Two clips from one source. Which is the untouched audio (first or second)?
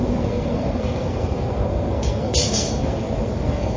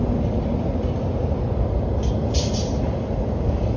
second